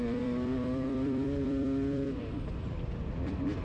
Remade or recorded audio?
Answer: remade